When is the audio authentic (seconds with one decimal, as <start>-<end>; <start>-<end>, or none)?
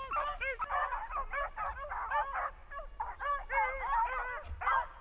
0.0-5.0